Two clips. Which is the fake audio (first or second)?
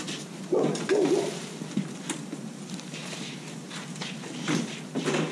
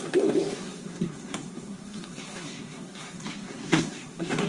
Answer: second